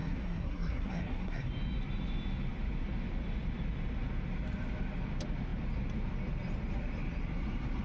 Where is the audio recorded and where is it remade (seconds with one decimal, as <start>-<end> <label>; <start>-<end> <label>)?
0.0-1.5 remade; 1.5-7.8 recorded